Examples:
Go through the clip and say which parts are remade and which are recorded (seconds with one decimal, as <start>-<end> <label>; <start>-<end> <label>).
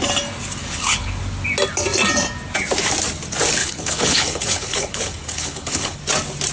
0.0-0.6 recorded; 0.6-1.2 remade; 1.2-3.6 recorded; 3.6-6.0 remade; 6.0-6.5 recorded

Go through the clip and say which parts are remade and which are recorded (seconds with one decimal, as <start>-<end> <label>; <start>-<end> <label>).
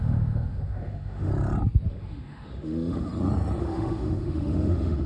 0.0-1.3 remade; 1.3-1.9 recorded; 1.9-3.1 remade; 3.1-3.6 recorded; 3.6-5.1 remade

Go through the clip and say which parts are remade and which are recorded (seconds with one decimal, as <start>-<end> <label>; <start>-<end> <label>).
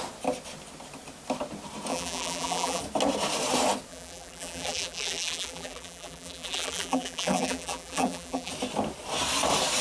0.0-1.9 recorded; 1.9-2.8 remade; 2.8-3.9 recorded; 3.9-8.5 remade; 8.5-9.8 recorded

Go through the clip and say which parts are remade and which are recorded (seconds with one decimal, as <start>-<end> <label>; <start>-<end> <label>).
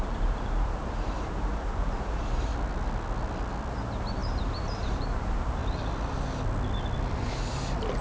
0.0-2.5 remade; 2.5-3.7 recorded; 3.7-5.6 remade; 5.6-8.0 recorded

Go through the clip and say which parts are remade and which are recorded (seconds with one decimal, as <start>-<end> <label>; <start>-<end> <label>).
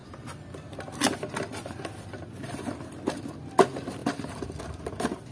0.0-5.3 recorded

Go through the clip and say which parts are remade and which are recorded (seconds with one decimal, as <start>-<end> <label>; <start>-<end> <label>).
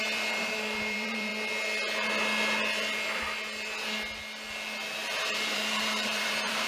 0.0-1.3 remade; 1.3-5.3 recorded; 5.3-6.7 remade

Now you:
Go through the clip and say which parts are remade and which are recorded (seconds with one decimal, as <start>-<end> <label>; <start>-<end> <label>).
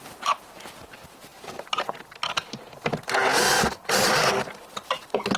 0.0-5.4 recorded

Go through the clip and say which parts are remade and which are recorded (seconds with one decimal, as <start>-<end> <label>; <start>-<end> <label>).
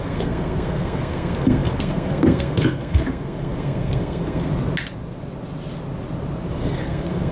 0.0-4.5 remade; 4.5-6.5 recorded; 6.5-7.3 remade